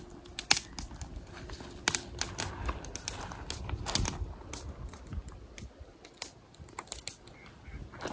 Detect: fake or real real